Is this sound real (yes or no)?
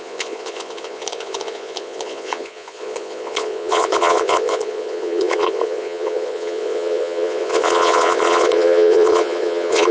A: no